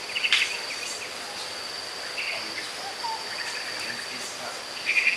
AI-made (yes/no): no